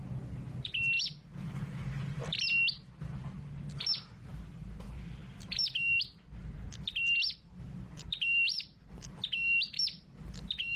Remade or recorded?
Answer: recorded